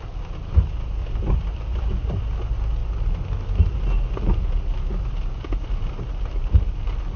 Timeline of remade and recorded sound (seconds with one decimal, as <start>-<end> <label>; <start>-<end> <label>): 0.0-1.0 recorded; 1.0-2.2 remade; 2.2-7.2 recorded